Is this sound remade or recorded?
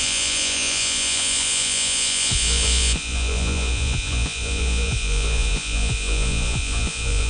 remade